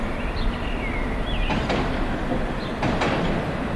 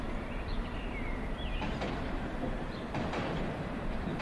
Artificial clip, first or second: second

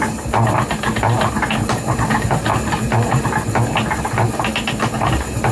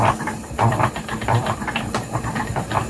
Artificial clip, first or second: second